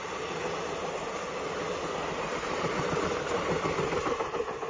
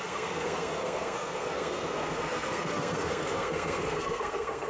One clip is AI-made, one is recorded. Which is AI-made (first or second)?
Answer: second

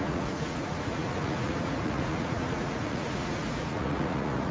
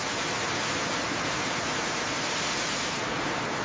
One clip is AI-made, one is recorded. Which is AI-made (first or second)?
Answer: first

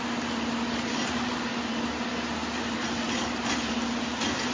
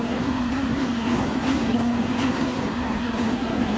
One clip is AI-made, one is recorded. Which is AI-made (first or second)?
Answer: second